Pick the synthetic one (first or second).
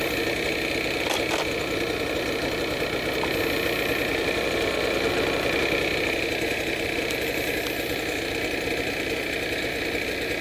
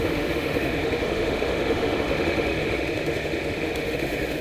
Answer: second